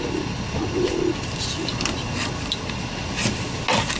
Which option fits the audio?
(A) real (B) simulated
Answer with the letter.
A